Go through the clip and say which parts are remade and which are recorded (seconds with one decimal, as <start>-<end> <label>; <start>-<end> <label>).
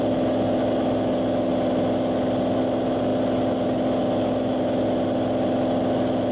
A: 0.0-6.3 recorded